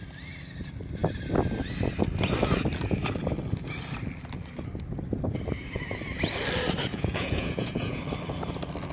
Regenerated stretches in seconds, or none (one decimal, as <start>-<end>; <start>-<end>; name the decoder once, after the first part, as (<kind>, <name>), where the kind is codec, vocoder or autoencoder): 6.9-8.0 (vocoder, Vocos)